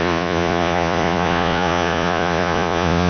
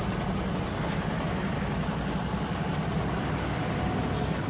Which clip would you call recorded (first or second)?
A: second